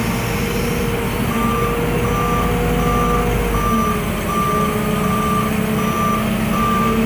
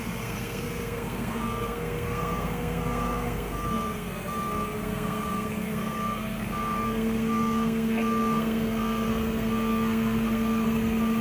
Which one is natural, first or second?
first